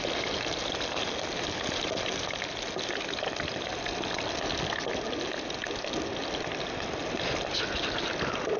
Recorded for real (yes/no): yes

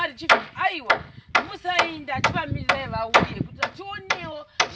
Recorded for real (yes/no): yes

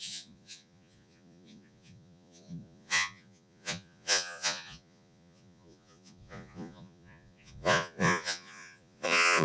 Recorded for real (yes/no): no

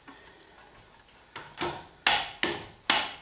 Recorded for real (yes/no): yes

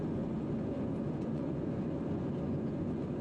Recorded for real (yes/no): no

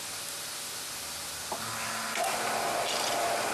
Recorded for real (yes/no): yes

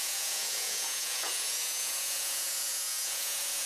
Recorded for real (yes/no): no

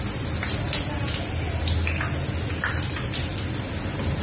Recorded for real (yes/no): yes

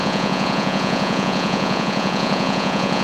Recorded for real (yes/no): no